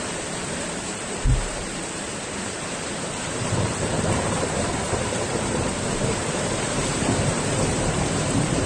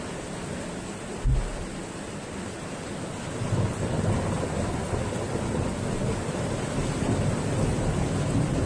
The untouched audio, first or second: second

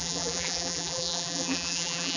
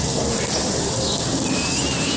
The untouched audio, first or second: second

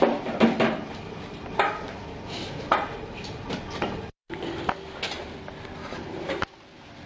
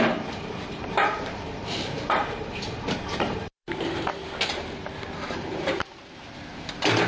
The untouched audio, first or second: first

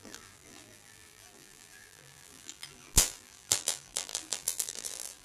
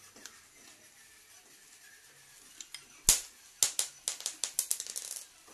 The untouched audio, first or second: second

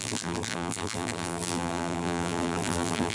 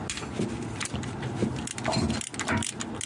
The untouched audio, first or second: second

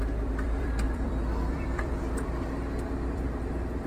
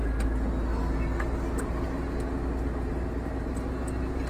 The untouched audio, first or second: second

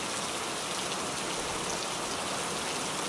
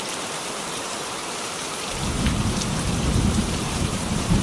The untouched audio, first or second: first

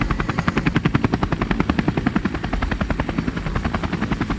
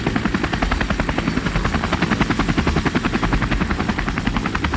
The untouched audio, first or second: second